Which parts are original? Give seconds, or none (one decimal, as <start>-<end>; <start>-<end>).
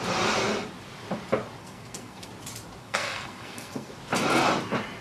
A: 0.0-1.6; 2.3-2.8; 3.9-5.0